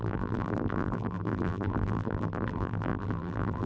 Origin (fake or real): fake